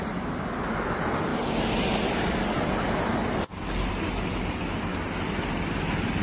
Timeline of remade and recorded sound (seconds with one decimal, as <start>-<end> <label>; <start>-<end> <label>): 0.0-6.2 recorded